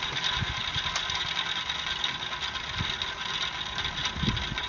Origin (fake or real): real